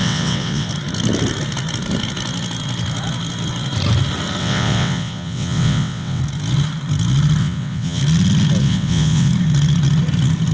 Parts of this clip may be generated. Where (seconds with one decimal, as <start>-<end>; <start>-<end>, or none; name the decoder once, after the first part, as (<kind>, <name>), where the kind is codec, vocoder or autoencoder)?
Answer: 0.0-0.7 (vocoder, WaveNeXt); 4.4-6.2; 7.4-8.0; 8.6-9.3